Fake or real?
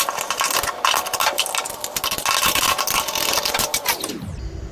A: real